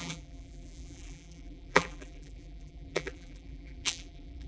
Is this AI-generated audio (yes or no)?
yes